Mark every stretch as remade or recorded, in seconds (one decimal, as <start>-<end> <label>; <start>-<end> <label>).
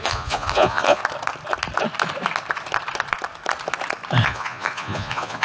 0.0-1.0 remade; 1.0-4.2 recorded; 4.2-5.4 remade